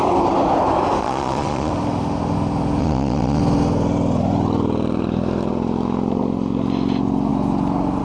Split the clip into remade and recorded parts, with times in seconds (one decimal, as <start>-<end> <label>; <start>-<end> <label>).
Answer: 0.0-1.0 recorded; 1.0-1.7 remade; 1.7-2.8 recorded; 2.8-3.4 remade; 3.4-8.0 recorded